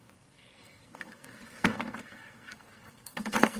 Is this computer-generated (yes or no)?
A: yes